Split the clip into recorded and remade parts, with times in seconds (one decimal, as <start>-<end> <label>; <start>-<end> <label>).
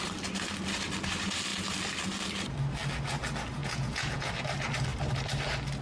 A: 0.0-3.6 recorded; 3.6-4.3 remade; 4.3-5.8 recorded